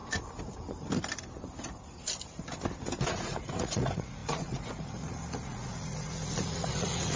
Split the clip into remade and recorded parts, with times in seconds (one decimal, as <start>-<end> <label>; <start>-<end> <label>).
0.0-3.2 recorded; 3.2-7.2 remade

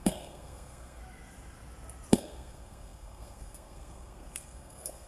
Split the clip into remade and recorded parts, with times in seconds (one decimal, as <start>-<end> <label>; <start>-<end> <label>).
0.0-1.0 remade; 1.0-2.1 recorded; 2.1-5.1 remade

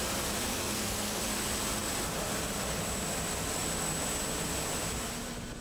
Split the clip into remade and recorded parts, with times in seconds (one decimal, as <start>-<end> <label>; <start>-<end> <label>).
0.0-0.5 recorded; 0.5-1.2 remade; 1.2-5.6 recorded

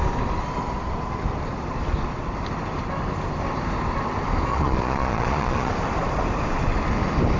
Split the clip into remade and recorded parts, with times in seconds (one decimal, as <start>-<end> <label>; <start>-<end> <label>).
0.0-4.5 recorded; 4.5-5.7 remade; 5.7-7.4 recorded